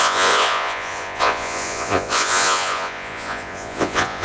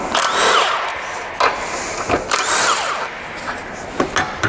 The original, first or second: second